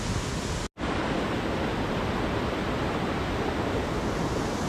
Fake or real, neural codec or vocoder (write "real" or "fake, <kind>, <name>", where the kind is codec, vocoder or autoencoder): real